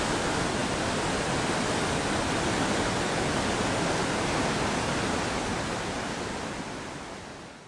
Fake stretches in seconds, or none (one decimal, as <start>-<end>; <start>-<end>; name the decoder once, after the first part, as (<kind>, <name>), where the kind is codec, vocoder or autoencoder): none